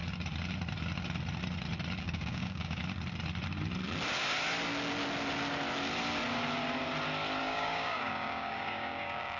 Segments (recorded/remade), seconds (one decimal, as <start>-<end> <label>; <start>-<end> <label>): 0.0-2.0 recorded; 2.0-2.8 remade; 2.8-7.4 recorded; 7.4-9.4 remade